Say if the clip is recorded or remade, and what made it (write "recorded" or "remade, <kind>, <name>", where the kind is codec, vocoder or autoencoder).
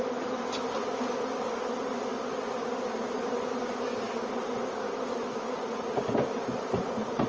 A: recorded